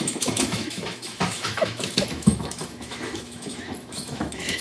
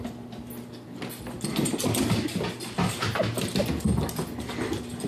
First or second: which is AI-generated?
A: first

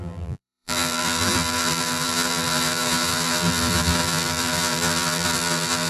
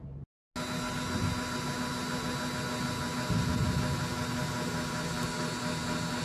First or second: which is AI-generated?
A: first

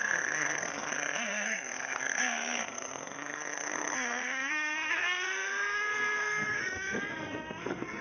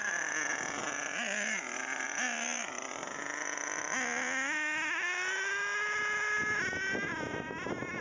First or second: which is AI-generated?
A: first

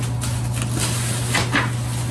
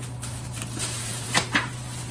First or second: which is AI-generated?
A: second